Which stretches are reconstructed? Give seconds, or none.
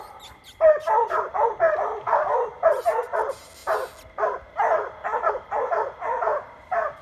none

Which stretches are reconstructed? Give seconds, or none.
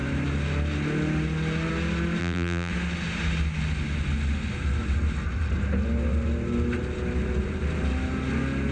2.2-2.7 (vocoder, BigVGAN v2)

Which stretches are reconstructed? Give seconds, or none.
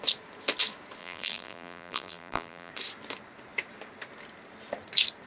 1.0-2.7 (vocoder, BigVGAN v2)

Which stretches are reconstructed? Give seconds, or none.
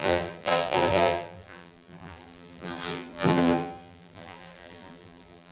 0.0-5.5 (vocoder, BigVGAN v2)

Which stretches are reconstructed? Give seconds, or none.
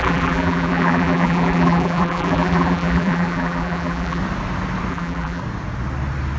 0.0-4.2 (vocoder, BigVGAN v2); 4.9-5.4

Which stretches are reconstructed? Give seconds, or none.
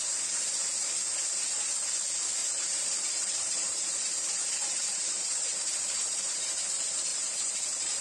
2.4-6.5 (vocoder, BigVGAN v2); 7.1-8.0